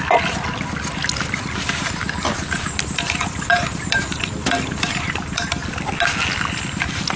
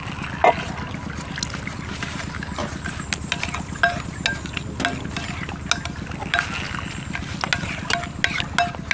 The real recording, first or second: second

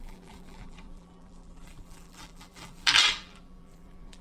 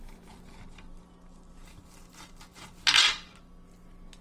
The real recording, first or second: second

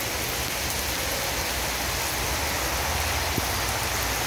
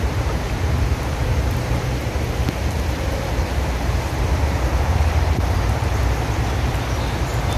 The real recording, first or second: first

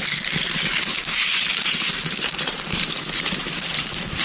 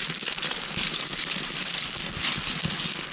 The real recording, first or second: second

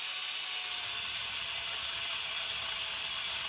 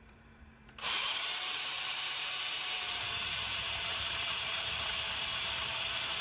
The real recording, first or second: first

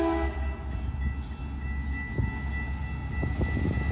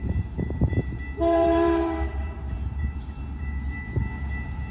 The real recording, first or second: first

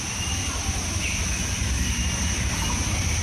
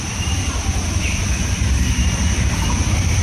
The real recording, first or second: first